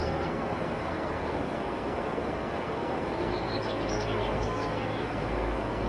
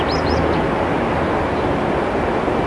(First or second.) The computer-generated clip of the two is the first